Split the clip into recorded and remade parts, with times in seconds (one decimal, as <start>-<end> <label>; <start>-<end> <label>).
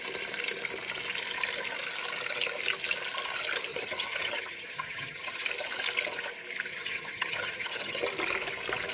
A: 0.0-3.7 recorded; 3.7-5.4 remade; 5.4-6.7 recorded; 6.7-8.0 remade; 8.0-8.9 recorded